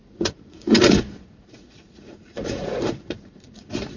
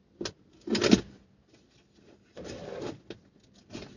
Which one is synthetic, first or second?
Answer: first